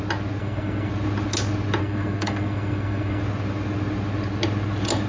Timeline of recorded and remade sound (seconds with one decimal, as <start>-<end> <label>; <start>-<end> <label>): 0.0-0.4 recorded; 0.4-0.9 remade; 0.9-1.8 recorded; 1.8-3.2 remade; 3.2-5.1 recorded